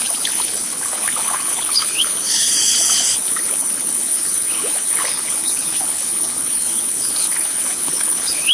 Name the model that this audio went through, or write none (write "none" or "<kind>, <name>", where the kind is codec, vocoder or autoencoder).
codec, HILCodec